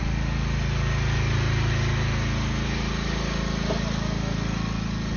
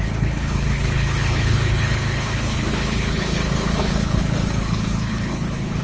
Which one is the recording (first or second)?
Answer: first